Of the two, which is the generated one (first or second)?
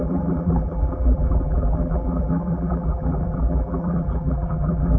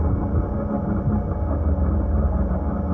first